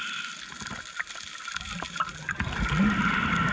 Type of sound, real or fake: real